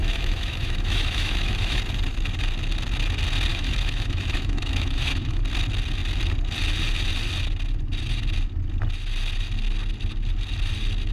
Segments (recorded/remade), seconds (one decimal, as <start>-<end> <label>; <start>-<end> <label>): 0.0-1.8 remade; 1.8-3.5 recorded; 3.5-5.4 remade; 5.4-11.1 recorded